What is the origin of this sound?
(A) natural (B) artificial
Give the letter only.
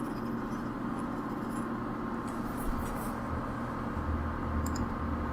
A